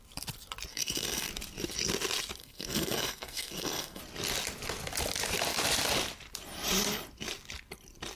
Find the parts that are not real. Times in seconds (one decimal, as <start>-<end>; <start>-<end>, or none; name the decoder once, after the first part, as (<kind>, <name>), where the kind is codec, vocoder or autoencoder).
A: 0.7-1.3 (codec, SNAC); 2.4-4.0